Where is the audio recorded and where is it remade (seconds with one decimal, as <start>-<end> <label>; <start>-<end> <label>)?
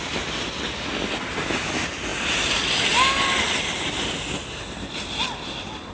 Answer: 0.0-5.9 recorded